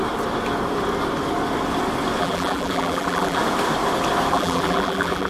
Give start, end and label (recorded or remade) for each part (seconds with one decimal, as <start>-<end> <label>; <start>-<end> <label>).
0.0-2.2 recorded; 2.2-3.4 remade; 3.4-4.3 recorded; 4.3-5.3 remade